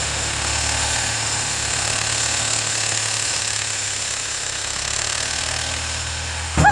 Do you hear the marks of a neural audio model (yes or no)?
yes